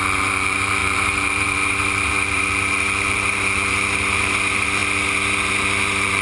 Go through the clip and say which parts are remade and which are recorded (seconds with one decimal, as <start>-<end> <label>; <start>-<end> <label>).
0.0-4.8 remade; 4.8-5.5 recorded; 5.5-6.2 remade

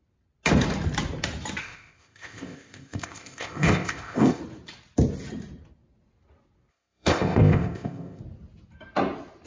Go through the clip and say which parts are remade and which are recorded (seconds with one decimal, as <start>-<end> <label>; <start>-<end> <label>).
0.0-1.6 recorded; 1.6-4.4 remade; 4.4-6.7 recorded; 6.7-8.2 remade; 8.2-9.5 recorded

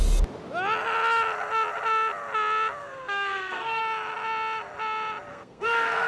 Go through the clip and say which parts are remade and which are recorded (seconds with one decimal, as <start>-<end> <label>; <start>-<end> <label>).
0.0-2.8 recorded; 2.8-3.8 remade; 3.8-5.3 recorded; 5.3-6.1 remade

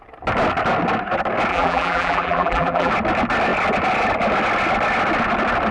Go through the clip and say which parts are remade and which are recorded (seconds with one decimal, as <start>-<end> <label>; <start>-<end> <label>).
0.0-1.5 recorded; 1.5-2.9 remade; 2.9-5.7 recorded

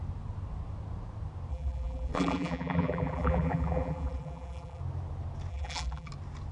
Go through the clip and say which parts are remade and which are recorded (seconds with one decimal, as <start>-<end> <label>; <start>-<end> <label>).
0.0-1.5 recorded; 1.5-4.8 remade; 4.8-5.5 recorded; 5.5-6.1 remade; 6.1-6.5 recorded

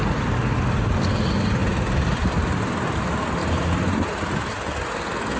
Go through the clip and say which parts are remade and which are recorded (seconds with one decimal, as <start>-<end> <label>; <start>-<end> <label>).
0.0-5.4 recorded

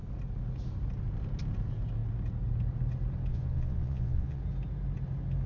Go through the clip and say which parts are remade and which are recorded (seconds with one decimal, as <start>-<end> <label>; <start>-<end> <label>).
0.0-3.3 recorded; 3.3-4.4 remade; 4.4-5.5 recorded